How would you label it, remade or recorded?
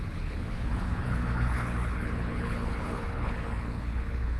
remade